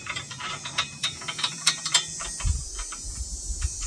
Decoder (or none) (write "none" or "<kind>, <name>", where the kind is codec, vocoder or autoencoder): vocoder, BigVGAN v2